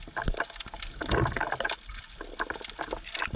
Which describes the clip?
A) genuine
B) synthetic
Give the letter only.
A